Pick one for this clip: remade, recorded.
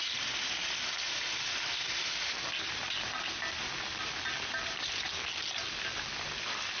recorded